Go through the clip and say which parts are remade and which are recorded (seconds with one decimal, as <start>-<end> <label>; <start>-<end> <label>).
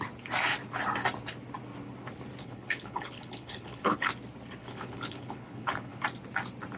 0.0-2.4 recorded; 2.4-4.1 remade; 4.1-4.6 recorded; 4.6-6.0 remade; 6.0-6.8 recorded